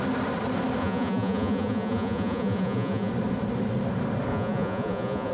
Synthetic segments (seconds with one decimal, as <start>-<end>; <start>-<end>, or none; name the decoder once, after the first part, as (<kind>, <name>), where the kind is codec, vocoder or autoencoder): 0.8-3.1 (vocoder, Vocos); 4.3-5.3